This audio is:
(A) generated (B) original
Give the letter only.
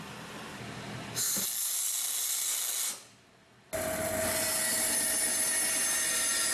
B